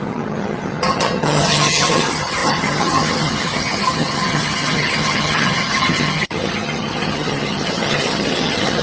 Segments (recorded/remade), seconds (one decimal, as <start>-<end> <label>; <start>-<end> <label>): 0.0-8.8 remade